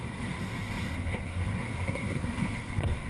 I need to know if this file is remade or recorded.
remade